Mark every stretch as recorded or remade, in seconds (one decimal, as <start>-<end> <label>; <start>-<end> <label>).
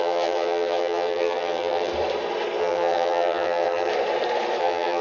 0.0-1.9 remade; 1.9-2.6 recorded; 2.6-3.9 remade; 3.9-4.6 recorded; 4.6-5.0 remade